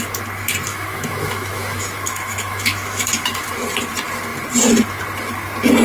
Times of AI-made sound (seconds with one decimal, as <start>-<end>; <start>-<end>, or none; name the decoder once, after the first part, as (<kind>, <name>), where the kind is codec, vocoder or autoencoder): 0.7-3.5 (autoencoder, DAC-VAE)